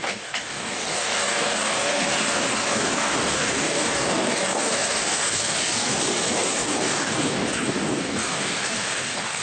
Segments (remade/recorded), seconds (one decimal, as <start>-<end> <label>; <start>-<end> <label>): 0.0-9.4 remade